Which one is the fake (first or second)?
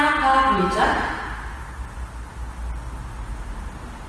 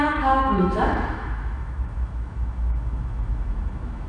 second